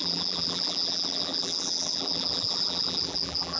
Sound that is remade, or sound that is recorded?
remade